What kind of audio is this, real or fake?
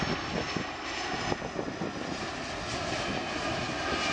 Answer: real